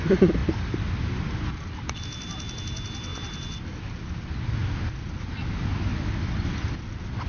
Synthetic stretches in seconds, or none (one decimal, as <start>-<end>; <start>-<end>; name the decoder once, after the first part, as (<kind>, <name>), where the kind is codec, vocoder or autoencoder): none